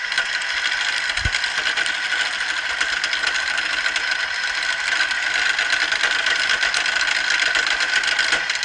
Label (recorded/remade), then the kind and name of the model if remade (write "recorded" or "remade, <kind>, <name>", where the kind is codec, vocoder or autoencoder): recorded